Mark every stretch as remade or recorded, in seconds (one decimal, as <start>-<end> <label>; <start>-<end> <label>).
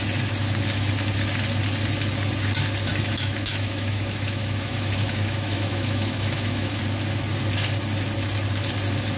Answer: 0.0-2.9 recorded; 2.9-6.8 remade; 6.8-9.2 recorded